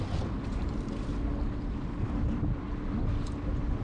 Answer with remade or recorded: recorded